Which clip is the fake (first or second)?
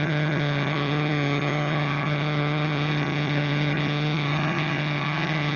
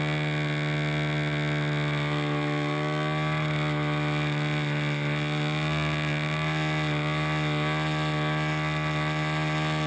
first